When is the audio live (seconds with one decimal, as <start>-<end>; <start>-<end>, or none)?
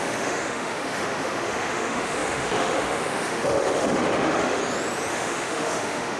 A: 4.6-5.1